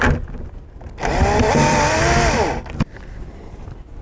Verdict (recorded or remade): recorded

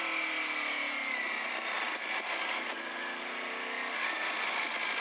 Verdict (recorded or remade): recorded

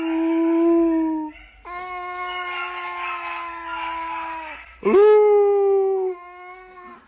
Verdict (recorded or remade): recorded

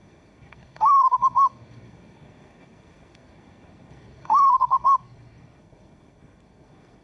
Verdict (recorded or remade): remade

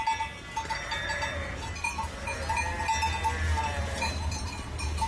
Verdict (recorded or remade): recorded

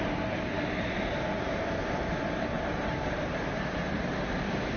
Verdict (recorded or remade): remade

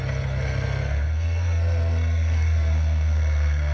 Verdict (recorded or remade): remade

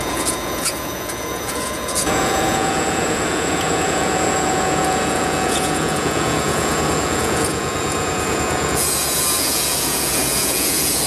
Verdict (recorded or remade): remade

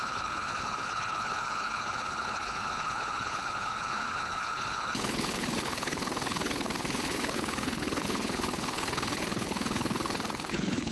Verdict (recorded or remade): remade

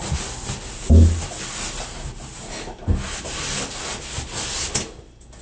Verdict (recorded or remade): recorded